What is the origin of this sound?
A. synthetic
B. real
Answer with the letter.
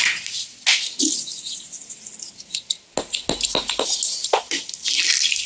B